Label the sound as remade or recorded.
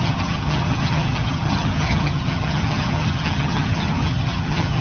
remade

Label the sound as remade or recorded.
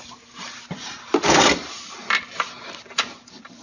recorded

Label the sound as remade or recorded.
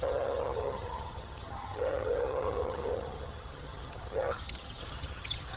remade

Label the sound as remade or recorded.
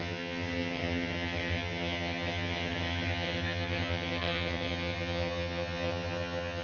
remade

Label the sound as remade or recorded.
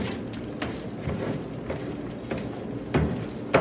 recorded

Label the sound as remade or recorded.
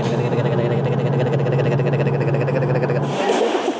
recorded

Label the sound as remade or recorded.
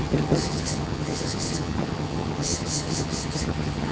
remade